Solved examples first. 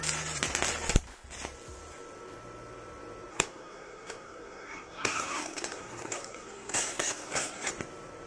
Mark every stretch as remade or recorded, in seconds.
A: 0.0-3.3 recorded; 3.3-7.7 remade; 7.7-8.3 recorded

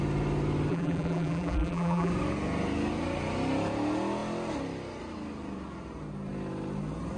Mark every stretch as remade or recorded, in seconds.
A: 0.0-0.7 recorded; 0.7-2.1 remade; 2.1-7.2 recorded

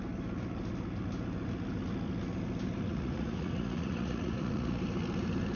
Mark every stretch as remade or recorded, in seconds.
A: 0.0-2.9 recorded; 2.9-4.8 remade; 4.8-5.6 recorded

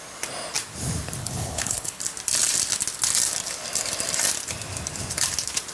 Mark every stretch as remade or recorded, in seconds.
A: 0.0-1.2 recorded; 1.2-2.0 remade; 2.0-5.7 recorded